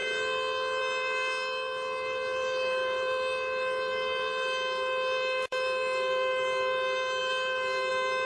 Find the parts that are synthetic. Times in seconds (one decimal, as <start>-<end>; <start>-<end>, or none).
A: 0.8-8.3